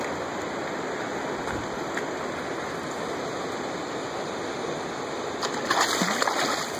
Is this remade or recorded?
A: recorded